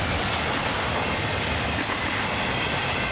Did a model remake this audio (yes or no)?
no